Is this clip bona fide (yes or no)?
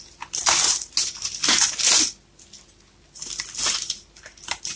yes